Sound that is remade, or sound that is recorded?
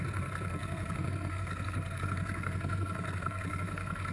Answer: remade